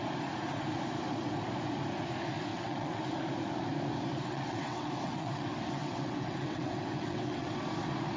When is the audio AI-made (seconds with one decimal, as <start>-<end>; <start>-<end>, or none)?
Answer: 2.5-3.1; 4.2-7.6

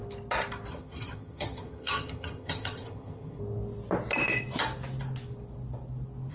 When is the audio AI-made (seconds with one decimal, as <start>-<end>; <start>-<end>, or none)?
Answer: 0.7-3.4

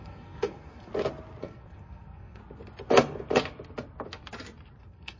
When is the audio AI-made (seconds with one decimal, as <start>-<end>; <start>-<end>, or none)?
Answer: 0.0-0.9; 1.4-2.4; 4.8-5.2

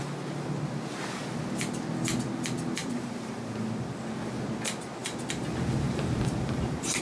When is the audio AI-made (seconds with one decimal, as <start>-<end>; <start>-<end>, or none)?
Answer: 2.8-4.0; 5.0-7.0

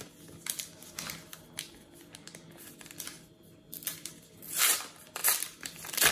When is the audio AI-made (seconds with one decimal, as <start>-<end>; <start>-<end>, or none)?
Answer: none

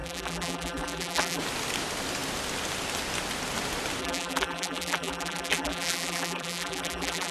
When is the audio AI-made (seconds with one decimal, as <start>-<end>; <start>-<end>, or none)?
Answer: 0.0-1.4; 4.0-7.3

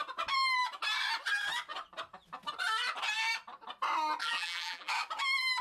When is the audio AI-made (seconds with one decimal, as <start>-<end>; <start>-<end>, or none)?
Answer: 4.2-4.9

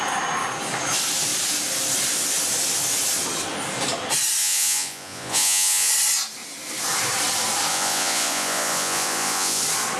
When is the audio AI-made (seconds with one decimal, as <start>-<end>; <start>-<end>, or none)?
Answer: 4.4-5.9; 7.7-9.6